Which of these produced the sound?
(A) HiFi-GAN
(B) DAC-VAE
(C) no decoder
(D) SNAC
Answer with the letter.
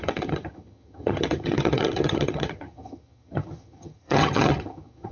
A